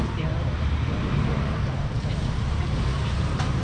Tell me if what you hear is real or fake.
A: fake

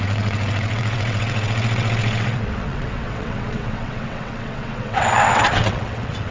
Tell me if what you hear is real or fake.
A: fake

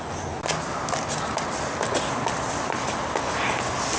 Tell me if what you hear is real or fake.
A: real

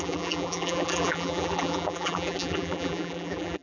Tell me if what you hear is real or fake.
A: fake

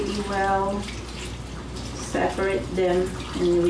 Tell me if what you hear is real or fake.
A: real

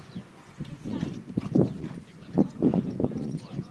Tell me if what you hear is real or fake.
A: fake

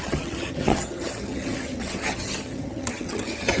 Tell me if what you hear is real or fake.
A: fake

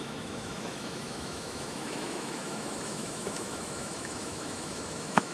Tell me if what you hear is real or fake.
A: fake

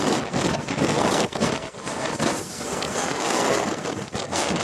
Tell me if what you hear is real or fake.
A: fake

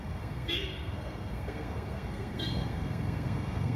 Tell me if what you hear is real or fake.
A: fake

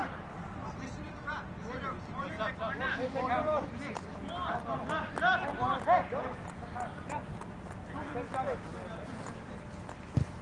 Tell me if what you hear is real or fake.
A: real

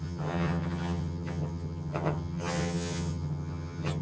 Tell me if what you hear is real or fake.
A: fake